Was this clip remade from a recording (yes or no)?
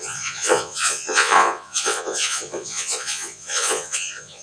yes